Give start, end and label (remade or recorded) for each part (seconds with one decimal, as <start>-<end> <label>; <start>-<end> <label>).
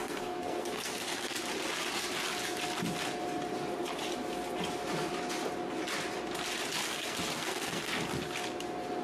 0.0-1.4 remade; 1.4-6.8 recorded; 6.8-7.8 remade; 7.8-9.0 recorded